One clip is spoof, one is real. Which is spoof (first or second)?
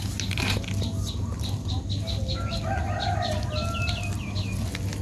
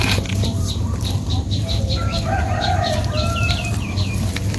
second